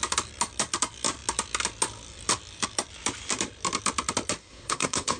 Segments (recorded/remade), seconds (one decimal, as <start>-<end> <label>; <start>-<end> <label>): 0.0-4.4 recorded; 4.4-5.2 remade